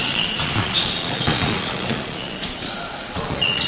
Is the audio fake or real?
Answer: fake